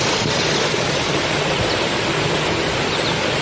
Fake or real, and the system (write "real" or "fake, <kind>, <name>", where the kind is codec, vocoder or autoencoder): real